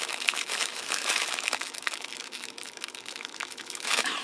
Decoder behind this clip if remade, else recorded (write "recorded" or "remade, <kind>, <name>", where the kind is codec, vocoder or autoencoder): remade, autoencoder, DAC-VAE